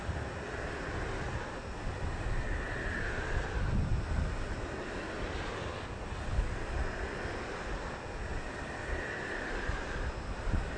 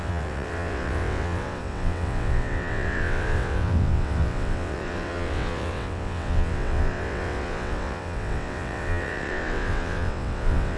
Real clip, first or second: first